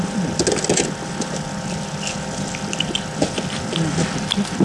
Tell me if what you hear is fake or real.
real